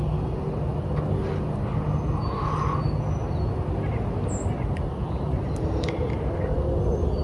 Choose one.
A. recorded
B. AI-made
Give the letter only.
A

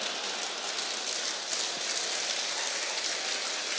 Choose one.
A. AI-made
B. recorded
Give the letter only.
B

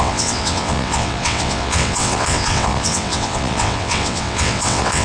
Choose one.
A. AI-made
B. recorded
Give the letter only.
A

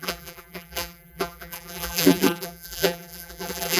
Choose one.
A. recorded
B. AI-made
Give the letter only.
B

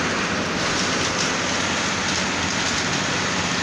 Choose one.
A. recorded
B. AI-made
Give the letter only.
A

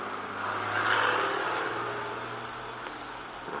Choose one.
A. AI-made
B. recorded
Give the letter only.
B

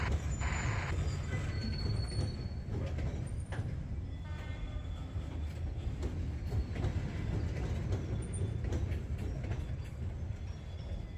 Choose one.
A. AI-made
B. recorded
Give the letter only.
B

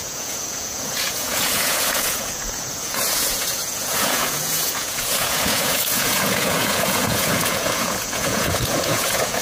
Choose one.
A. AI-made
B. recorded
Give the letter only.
A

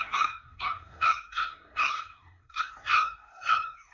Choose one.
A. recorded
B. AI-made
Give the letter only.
B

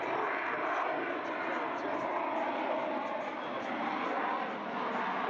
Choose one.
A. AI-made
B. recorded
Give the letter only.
B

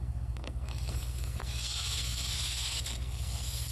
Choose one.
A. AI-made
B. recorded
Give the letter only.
A